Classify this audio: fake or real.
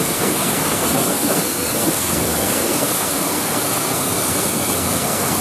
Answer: fake